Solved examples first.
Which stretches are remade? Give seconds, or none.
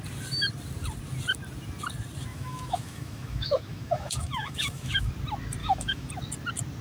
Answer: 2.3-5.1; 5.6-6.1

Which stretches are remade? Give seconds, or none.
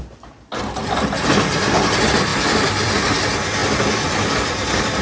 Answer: 0.8-1.3; 2.3-3.0; 3.6-4.5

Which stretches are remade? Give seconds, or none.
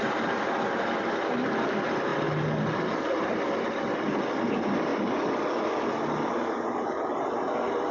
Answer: none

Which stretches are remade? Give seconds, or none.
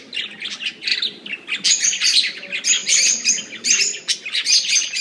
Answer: none